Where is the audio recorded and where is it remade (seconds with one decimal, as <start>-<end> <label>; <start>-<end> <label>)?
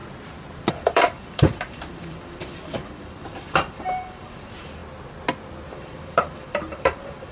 0.0-0.7 recorded; 0.7-4.8 remade; 4.8-5.7 recorded; 5.7-7.3 remade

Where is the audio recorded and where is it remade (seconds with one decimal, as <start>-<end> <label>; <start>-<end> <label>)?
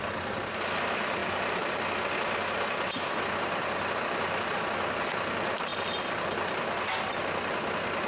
0.0-8.1 recorded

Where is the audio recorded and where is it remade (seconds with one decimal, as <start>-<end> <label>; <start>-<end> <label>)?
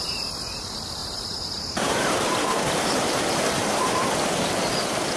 0.0-1.0 recorded; 1.0-4.1 remade; 4.1-5.2 recorded